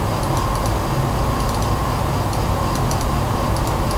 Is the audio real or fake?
real